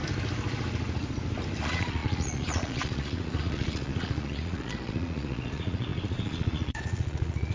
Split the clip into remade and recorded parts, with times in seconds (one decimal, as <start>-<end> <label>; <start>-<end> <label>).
0.0-1.6 recorded; 1.6-7.5 remade